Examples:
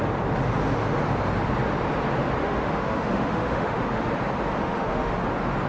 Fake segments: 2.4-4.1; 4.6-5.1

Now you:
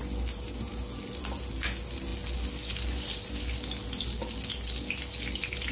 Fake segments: none

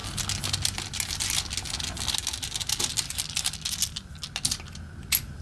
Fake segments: none

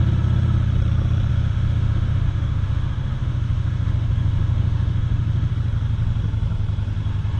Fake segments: 1.3-5.5

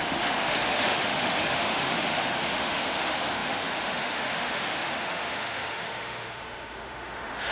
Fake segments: 0.0-7.5